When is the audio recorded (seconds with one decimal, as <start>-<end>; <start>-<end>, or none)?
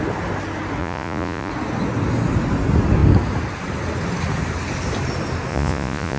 0.0-0.8; 1.5-5.5